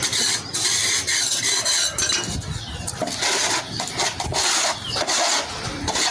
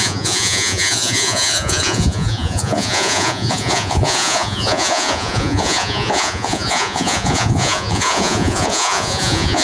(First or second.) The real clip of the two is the first